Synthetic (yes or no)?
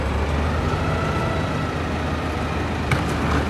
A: no